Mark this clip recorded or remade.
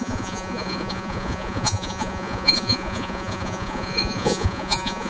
remade